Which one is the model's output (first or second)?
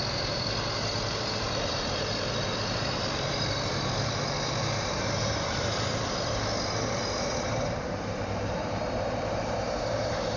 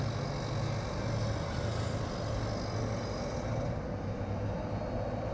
first